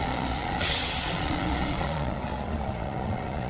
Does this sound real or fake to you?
fake